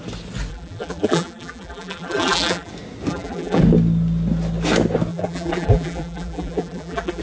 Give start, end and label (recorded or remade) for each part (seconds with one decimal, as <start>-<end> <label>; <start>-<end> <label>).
0.0-0.5 recorded; 0.5-2.7 remade; 2.7-3.1 recorded; 3.1-3.6 remade; 3.6-5.1 recorded; 5.1-7.2 remade

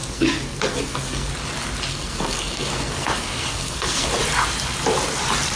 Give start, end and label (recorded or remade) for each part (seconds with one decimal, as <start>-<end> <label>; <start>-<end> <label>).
0.0-1.3 remade; 1.3-1.9 recorded; 1.9-4.1 remade; 4.1-5.6 recorded

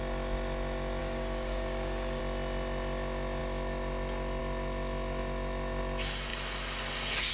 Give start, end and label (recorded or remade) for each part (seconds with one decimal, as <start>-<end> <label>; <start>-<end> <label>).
0.0-1.0 recorded; 1.0-2.2 remade; 2.2-7.3 recorded

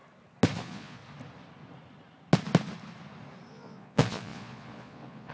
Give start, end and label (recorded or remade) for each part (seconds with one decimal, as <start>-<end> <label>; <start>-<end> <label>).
0.0-0.6 recorded; 0.6-1.0 remade; 1.0-3.5 recorded; 3.5-5.3 remade

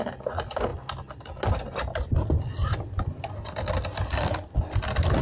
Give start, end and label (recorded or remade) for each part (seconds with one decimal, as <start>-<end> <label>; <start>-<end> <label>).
0.0-5.2 recorded

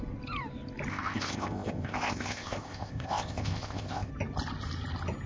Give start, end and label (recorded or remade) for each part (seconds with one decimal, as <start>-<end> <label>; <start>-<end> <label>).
0.0-0.9 recorded; 0.9-4.1 remade; 4.1-5.3 recorded

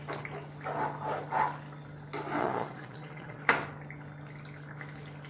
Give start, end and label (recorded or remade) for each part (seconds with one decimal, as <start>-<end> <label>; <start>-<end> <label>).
0.0-2.4 recorded; 2.4-3.4 remade; 3.4-5.3 recorded